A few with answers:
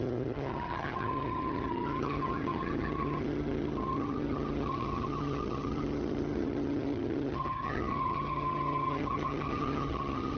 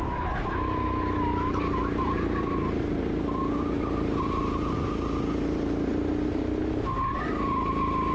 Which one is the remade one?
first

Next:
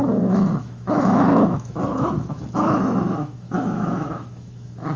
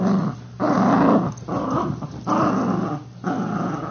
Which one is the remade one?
first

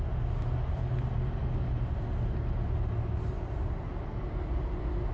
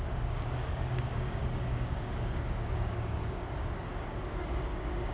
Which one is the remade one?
second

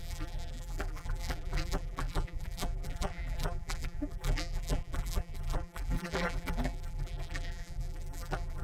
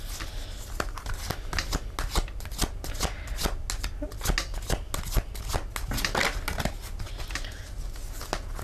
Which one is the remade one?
first